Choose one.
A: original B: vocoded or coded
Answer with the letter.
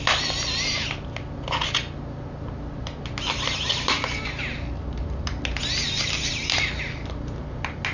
A